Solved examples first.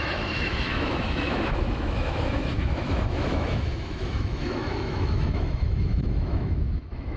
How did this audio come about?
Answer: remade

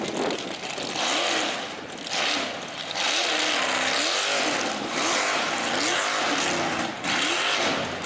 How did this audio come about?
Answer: recorded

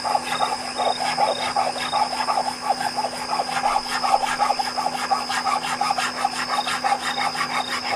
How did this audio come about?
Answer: recorded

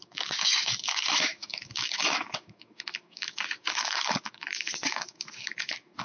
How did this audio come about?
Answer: remade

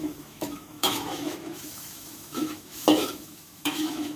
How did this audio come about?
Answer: remade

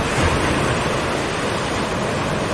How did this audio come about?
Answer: recorded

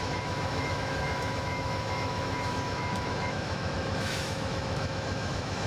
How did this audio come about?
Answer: remade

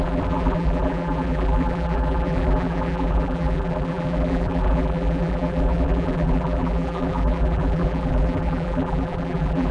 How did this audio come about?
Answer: remade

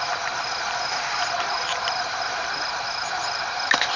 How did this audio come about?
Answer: recorded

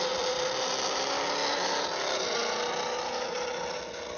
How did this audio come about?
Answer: recorded